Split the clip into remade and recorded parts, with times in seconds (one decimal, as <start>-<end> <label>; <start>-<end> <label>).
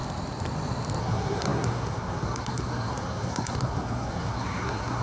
0.0-1.0 recorded; 1.0-5.0 remade